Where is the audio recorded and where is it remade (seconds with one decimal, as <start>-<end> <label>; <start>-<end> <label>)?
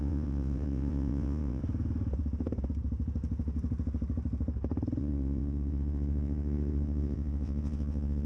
0.0-1.6 remade; 1.6-5.0 recorded; 5.0-8.3 remade